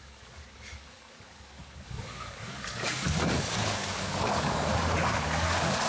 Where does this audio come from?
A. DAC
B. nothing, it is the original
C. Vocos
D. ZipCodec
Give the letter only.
A